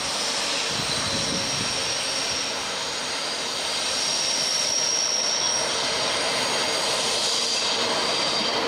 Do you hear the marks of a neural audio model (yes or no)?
no